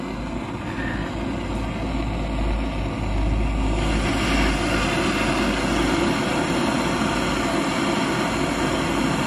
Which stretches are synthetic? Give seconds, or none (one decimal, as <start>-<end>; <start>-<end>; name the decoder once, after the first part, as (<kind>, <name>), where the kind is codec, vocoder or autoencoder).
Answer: none